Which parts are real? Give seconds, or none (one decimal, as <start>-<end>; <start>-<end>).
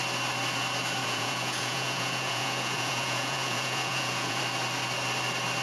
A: 0.0-1.0; 4.4-5.6